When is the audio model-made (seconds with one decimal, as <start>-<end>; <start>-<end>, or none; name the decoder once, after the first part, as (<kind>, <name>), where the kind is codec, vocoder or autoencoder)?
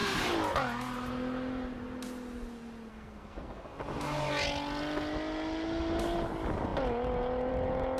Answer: 2.9-3.8 (codec, SNAC)